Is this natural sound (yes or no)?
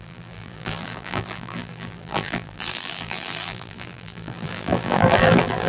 no